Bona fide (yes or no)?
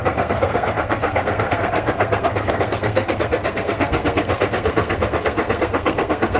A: no